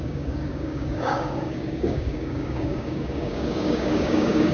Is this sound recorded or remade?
remade